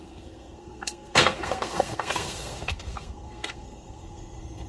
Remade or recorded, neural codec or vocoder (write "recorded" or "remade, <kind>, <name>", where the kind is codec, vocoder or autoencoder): remade, codec, SNAC